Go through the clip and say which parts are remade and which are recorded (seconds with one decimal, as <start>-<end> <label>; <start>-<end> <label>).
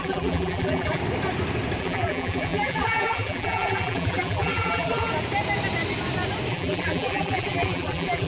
0.0-1.0 remade; 1.0-1.8 recorded; 1.8-5.1 remade; 5.1-6.5 recorded; 6.5-8.3 remade